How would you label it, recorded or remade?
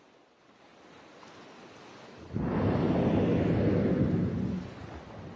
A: recorded